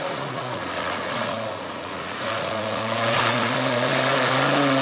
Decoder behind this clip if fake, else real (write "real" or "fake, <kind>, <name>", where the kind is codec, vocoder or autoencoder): fake, vocoder, Vocos